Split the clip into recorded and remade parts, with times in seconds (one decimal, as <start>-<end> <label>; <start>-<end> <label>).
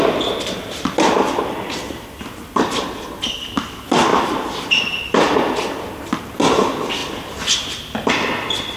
0.0-0.6 recorded; 0.6-1.4 remade; 1.4-4.1 recorded; 4.1-5.0 remade; 5.0-8.8 recorded